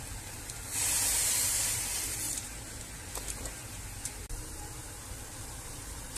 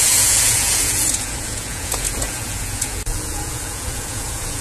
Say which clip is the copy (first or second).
second